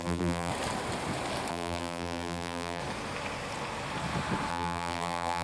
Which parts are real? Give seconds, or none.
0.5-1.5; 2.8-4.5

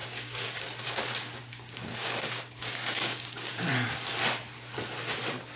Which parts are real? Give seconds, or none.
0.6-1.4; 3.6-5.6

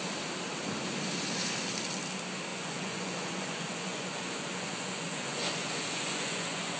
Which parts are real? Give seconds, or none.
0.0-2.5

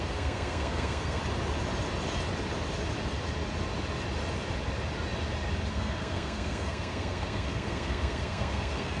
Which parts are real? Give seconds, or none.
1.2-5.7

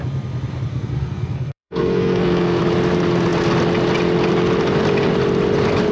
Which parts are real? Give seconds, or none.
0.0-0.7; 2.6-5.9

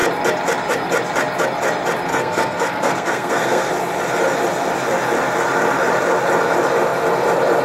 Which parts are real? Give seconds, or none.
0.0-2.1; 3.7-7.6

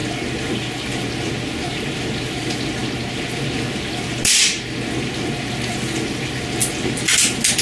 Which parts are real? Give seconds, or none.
0.0-7.6